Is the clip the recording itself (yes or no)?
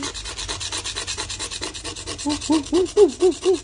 yes